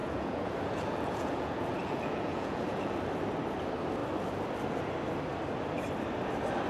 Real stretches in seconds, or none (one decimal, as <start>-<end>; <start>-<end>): 2.9-6.7